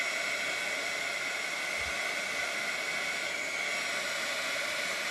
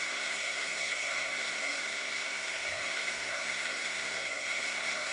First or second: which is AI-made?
second